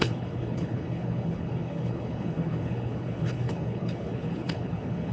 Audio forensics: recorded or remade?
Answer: remade